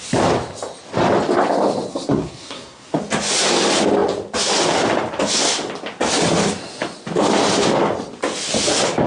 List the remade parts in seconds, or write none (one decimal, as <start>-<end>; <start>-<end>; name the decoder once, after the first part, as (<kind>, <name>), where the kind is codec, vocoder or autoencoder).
1.9-3.0 (codec, SNAC)